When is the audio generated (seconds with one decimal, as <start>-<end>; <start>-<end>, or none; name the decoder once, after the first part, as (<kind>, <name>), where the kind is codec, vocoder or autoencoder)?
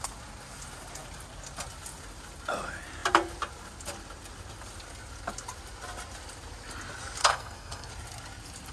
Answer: 7.2-7.9 (codec, SNAC)